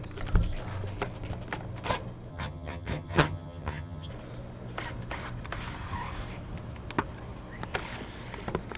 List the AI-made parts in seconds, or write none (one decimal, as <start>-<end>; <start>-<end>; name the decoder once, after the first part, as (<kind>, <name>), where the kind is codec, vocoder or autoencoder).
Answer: 2.3-4.1 (vocoder, HiFi-GAN)